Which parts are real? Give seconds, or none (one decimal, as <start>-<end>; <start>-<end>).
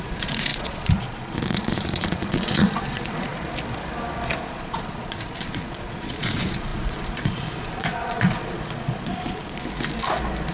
3.3-4.4; 9.6-10.5